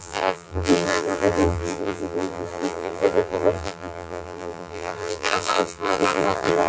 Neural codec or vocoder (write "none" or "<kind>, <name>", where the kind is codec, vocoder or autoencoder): vocoder, BigVGAN v2